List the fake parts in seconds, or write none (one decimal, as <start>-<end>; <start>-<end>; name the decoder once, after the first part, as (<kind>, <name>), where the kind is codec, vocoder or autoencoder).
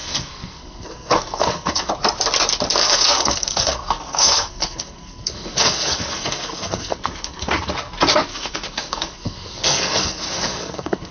0.0-1.9 (codec, SNAC); 2.8-7.7; 8.3-11.1